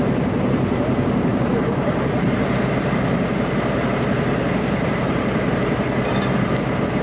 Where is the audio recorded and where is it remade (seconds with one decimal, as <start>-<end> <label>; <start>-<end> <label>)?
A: 0.0-1.3 recorded; 1.3-2.4 remade; 2.4-7.0 recorded